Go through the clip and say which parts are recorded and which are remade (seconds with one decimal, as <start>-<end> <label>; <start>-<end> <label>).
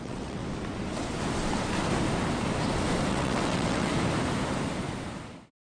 0.0-0.4 remade; 0.4-3.1 recorded; 3.1-3.9 remade; 3.9-5.7 recorded